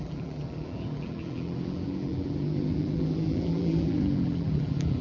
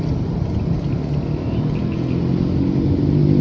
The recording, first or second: second